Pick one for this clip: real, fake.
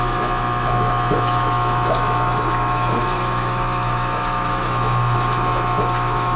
fake